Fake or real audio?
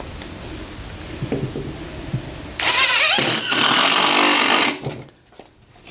real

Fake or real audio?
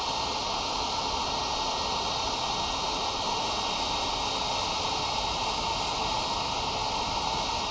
real